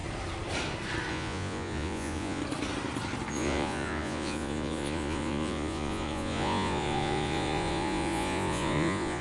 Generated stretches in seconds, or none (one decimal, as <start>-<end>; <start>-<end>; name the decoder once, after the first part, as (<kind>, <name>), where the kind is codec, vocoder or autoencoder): 1.1-2.4 (vocoder, Vocos); 3.3-9.2